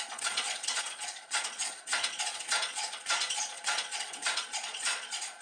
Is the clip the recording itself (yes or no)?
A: no